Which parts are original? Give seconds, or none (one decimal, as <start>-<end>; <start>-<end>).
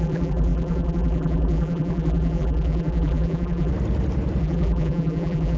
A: 3.7-4.4